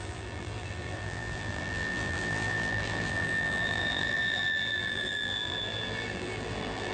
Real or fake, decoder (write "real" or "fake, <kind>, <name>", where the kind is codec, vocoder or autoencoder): fake, vocoder, BigVGAN v2